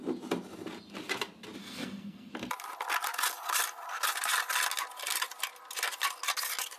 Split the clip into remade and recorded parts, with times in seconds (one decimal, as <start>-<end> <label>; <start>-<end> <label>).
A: 0.0-1.6 recorded; 1.6-2.3 remade; 2.3-6.8 recorded